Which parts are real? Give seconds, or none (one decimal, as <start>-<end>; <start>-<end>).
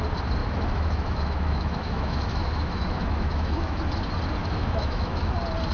0.0-0.4; 3.8-4.4; 5.3-5.7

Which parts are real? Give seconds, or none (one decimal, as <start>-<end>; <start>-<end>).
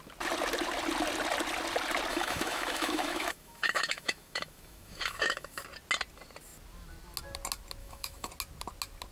0.0-2.1; 5.6-7.8; 8.3-9.1